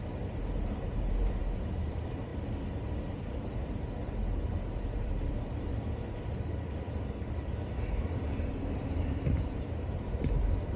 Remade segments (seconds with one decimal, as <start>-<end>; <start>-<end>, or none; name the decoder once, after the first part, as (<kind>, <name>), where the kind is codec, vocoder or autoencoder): 0.0-2.3 (vocoder, BigVGAN v2); 4.5-5.7; 7.9-10.8

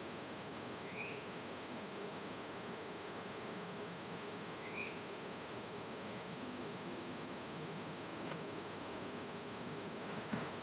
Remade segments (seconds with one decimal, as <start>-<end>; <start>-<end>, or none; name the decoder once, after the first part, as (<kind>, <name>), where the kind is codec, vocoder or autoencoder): 0.0-10.6 (autoencoder, DAC-VAE)

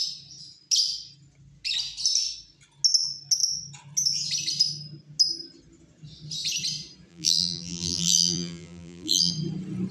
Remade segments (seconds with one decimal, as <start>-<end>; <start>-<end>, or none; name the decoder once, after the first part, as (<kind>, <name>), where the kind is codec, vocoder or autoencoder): 7.1-9.3 (vocoder, BigVGAN v2)

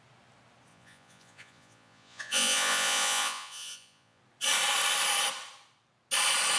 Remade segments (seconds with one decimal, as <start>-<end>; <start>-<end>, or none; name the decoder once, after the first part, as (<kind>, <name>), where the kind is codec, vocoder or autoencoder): 0.7-4.2 (vocoder, Vocos)

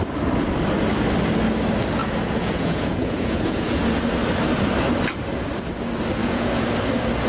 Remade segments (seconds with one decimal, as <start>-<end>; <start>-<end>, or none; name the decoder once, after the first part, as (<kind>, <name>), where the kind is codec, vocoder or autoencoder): 2.0-3.8 (vocoder, Vocos); 6.2-6.7

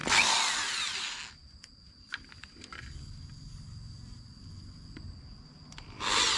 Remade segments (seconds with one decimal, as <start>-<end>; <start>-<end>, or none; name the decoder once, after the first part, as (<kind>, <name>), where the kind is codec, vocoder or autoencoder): none

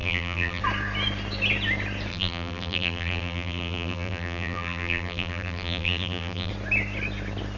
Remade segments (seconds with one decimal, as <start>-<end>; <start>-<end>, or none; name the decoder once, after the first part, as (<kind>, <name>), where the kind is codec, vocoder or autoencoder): 0.0-0.6 (vocoder, BigVGAN v2); 2.1-6.5

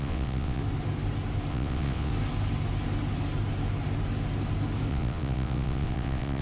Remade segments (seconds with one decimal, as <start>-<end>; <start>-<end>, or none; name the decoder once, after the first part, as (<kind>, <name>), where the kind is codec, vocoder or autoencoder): 0.0-0.6 (vocoder, WaveNeXt); 1.5-2.1; 4.9-6.4